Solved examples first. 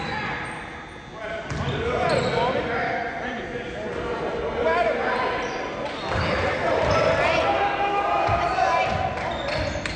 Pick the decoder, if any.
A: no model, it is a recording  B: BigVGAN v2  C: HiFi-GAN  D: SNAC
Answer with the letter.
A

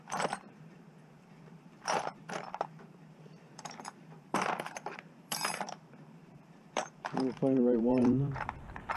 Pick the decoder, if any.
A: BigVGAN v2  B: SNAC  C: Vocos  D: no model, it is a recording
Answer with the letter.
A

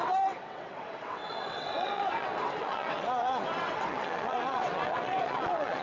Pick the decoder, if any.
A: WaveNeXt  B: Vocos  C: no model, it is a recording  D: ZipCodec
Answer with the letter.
A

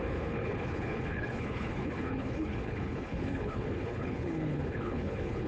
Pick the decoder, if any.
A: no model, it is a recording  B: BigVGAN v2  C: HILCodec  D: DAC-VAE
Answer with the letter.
C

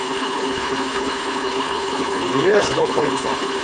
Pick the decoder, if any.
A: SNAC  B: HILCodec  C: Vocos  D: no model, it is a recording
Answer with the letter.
B